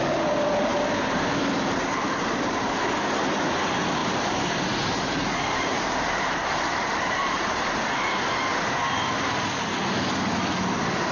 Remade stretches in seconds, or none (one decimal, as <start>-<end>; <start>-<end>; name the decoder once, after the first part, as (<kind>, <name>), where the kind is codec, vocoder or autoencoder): 0.7-2.1 (vocoder, BigVGAN v2); 4.0-7.7